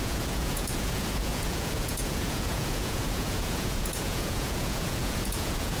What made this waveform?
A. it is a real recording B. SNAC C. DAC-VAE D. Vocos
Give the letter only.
D